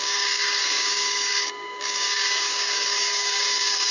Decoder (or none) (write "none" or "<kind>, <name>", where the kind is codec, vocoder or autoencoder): codec, DAC